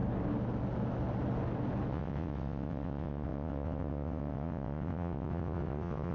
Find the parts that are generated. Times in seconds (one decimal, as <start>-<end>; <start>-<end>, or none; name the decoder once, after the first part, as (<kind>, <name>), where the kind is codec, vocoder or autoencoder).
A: 1.9-6.1 (vocoder, WaveNeXt)